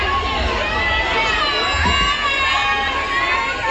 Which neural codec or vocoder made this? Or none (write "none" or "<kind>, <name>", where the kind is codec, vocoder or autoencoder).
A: none